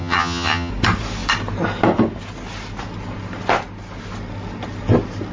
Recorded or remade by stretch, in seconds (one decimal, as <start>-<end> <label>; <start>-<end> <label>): 0.0-0.7 remade; 0.7-5.3 recorded